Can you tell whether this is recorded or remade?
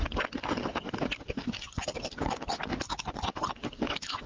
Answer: recorded